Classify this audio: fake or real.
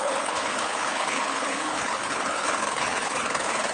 fake